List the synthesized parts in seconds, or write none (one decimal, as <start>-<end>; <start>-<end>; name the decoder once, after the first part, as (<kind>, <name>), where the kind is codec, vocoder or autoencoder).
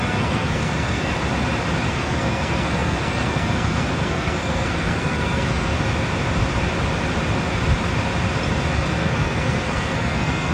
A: 0.0-1.1 (codec, SNAC); 1.9-5.7; 8.7-10.5